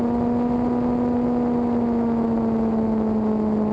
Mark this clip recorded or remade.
recorded